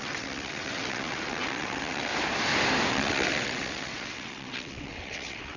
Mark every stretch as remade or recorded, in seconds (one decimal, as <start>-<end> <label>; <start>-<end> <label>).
0.0-2.1 remade; 2.1-2.9 recorded; 2.9-5.6 remade